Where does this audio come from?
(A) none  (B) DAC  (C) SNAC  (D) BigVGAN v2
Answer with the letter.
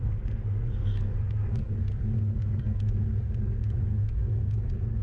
C